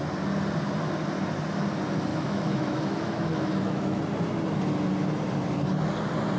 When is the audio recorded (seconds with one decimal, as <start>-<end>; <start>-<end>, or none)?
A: 0.0-2.1; 4.0-6.4